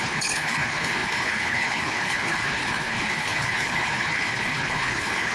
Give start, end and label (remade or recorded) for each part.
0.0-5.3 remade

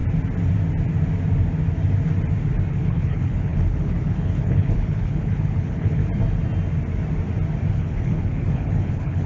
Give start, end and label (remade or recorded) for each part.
0.0-2.7 recorded; 2.7-6.0 remade; 6.0-7.7 recorded; 7.7-9.3 remade

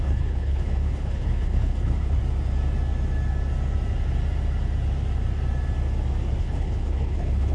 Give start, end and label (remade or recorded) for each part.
0.0-2.2 remade; 2.2-6.4 recorded; 6.4-7.5 remade

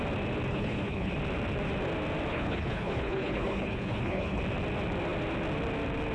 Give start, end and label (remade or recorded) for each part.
0.0-0.5 recorded; 0.5-1.1 remade; 1.1-2.3 recorded; 2.3-4.4 remade; 4.4-6.1 recorded

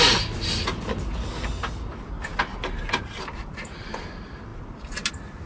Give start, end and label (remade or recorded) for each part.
0.0-5.5 recorded